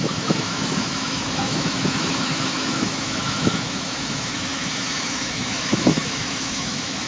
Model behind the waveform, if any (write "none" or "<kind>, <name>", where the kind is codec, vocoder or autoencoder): autoencoder, DAC-VAE